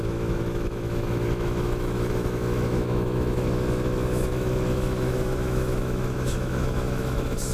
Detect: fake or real fake